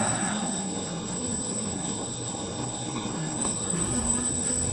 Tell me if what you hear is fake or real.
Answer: fake